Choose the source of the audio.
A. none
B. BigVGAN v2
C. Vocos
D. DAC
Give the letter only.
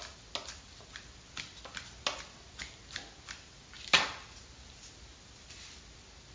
A